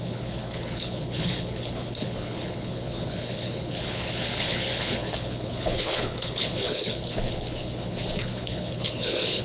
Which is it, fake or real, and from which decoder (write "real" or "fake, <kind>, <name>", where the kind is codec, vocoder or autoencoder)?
fake, codec, HILCodec